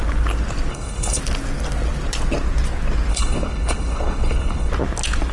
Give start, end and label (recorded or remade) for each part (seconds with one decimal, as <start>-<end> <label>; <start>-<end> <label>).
0.0-0.7 recorded; 0.7-1.2 remade; 1.2-3.1 recorded; 3.1-4.7 remade; 4.7-5.3 recorded

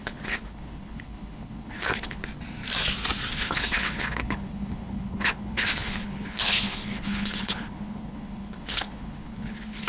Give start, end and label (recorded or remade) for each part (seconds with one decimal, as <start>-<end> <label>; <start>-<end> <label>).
0.0-2.2 remade; 2.2-3.3 recorded; 3.3-9.9 remade

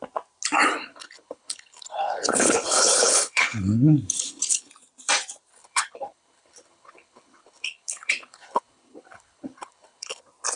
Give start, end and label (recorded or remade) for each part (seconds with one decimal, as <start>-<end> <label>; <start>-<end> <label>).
0.0-0.9 recorded; 0.9-4.7 remade; 4.7-5.5 recorded; 5.5-10.2 remade; 10.2-10.6 recorded

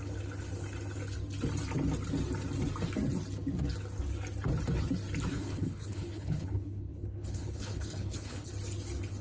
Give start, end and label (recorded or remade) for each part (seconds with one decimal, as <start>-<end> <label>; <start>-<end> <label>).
0.0-5.3 recorded; 5.3-8.5 remade; 8.5-9.2 recorded

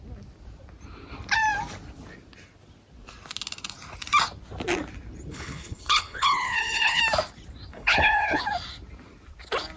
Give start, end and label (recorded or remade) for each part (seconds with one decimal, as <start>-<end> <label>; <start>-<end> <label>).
0.0-5.3 recorded; 5.3-7.0 remade; 7.0-7.7 recorded; 7.7-8.4 remade; 8.4-9.8 recorded

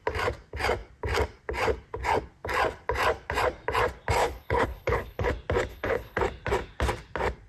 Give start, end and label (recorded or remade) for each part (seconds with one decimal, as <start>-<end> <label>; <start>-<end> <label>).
0.0-4.2 recorded; 4.2-5.3 remade; 5.3-5.7 recorded; 5.7-6.2 remade; 6.2-7.5 recorded

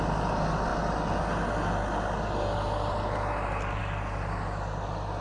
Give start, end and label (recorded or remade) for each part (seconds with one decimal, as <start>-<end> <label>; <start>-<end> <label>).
0.0-5.2 recorded

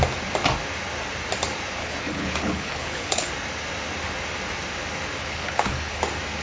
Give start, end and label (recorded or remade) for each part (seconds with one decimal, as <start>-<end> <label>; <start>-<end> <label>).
0.0-1.8 recorded; 1.8-3.3 remade; 3.3-5.2 recorded; 5.2-6.0 remade; 6.0-6.4 recorded